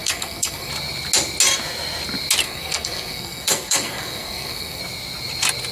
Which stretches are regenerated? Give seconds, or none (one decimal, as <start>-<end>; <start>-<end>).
0.0-0.7; 2.4-4.8